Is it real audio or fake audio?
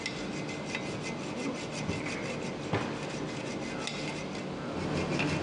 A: real